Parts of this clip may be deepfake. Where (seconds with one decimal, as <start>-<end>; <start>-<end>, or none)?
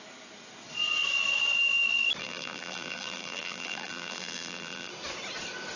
2.2-4.9